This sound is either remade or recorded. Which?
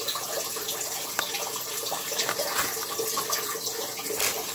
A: recorded